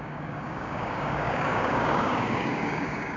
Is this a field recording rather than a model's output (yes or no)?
no